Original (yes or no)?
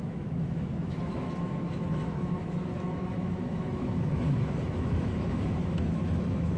no